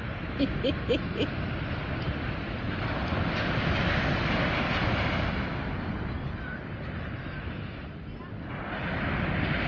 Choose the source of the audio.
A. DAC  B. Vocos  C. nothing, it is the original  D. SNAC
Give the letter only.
C